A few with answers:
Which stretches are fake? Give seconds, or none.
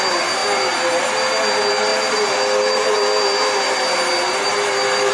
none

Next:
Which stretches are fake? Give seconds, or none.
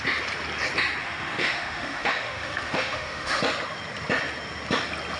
1.0-3.4 (autoencoder, DAC-VAE)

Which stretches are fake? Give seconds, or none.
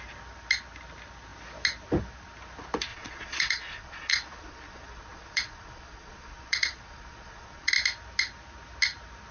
2.9-7.7 (vocoder, Vocos)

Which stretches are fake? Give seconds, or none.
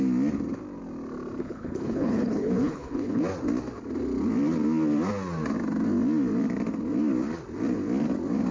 1.4-3.2 (codec, HILCodec)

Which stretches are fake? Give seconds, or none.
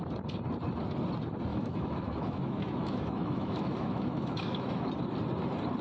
1.5-4.9 (autoencoder, DAC-VAE)